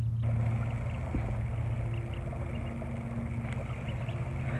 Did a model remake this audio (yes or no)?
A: no